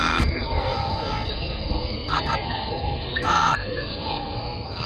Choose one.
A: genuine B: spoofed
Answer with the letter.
B